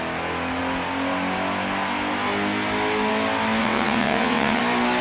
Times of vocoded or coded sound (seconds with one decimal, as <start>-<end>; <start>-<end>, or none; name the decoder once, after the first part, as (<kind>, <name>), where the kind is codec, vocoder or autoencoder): 3.6-4.6 (vocoder, WaveNeXt)